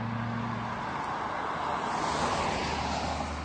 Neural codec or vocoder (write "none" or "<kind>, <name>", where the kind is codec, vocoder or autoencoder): none